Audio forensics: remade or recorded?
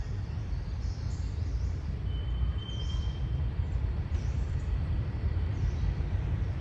remade